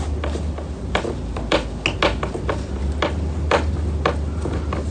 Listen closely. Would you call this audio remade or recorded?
recorded